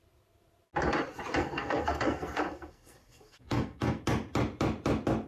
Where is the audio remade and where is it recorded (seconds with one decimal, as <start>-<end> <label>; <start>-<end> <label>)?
0.0-1.4 recorded; 1.4-4.0 remade; 4.0-5.3 recorded